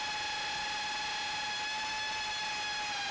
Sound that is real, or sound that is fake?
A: real